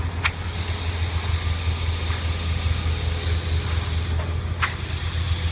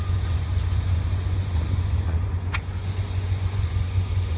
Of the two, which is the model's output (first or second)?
second